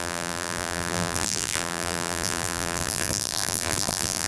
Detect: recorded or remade remade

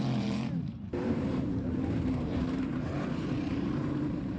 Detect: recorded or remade remade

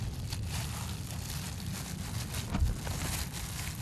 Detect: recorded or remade recorded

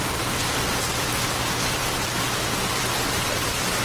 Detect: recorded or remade remade